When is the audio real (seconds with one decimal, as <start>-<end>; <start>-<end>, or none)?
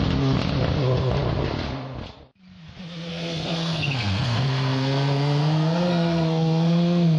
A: 0.0-3.1